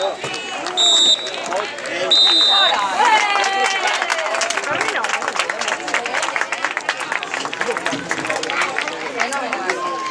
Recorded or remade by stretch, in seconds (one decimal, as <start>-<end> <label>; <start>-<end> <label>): 0.0-10.1 recorded